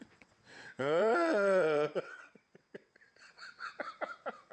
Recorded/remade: remade